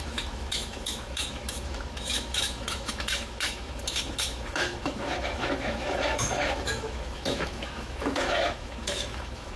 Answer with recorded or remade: remade